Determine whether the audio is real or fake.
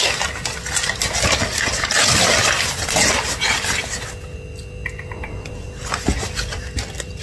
real